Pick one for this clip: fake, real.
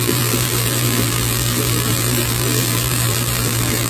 fake